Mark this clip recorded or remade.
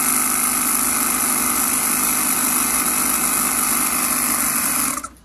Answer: recorded